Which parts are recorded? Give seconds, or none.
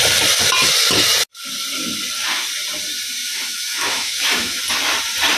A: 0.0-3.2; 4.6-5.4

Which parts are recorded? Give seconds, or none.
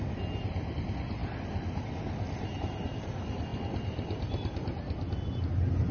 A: 0.0-5.9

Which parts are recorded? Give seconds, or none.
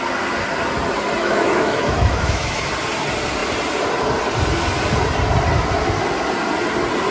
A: 0.0-1.2; 2.7-7.1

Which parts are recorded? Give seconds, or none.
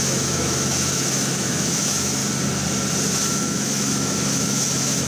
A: 2.2-3.3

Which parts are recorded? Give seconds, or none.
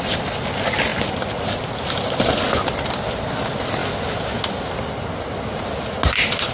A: 0.0-6.5